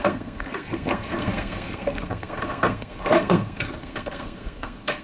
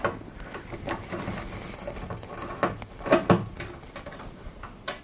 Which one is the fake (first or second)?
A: first